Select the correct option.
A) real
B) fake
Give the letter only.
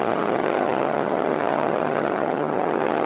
B